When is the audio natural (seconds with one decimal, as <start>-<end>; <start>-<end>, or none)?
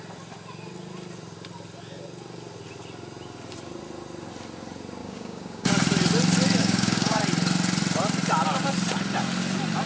0.0-5.0; 5.7-6.6; 7.2-9.9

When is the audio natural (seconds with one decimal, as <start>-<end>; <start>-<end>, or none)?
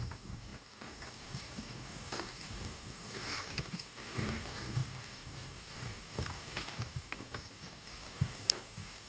none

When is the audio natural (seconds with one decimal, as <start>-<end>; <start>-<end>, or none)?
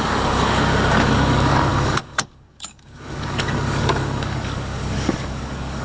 none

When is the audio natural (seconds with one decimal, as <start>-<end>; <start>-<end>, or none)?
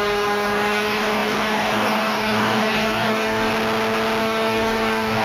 3.5-4.2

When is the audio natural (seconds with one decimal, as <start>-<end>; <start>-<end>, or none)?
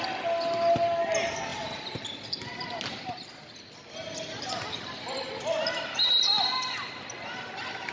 0.0-7.9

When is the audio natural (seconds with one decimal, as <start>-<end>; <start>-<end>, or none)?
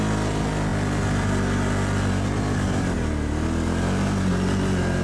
0.0-5.0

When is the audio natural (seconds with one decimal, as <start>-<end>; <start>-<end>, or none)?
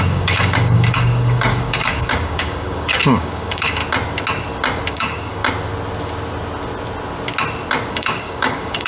3.8-4.9; 5.4-7.9